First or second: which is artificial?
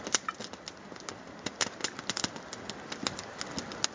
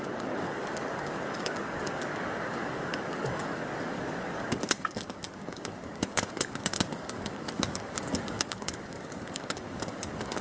second